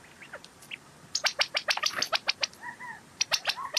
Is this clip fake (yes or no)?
yes